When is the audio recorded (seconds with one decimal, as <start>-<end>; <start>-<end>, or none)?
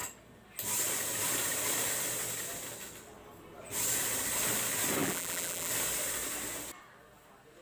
0.0-5.0; 5.7-7.6